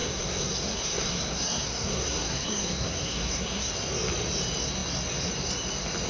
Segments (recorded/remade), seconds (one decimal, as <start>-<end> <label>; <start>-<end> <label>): 0.0-3.7 remade; 3.7-6.1 recorded